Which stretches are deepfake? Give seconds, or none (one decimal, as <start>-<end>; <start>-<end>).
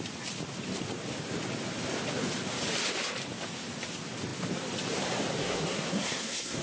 5.4-6.6